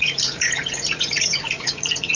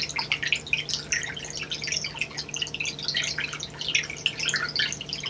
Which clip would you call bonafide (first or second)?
second